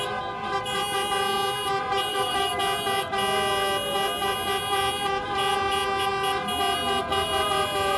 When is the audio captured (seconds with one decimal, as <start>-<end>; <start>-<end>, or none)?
0.0-2.1; 2.6-8.0